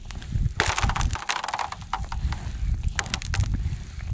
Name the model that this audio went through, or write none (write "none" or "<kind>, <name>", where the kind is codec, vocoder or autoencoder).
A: none